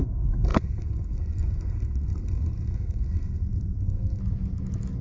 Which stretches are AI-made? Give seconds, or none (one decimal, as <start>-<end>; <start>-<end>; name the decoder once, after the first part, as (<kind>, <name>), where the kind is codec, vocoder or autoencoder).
0.0-4.2 (codec, SNAC)